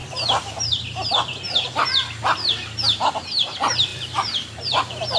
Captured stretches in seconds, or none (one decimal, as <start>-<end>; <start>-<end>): 0.0-3.1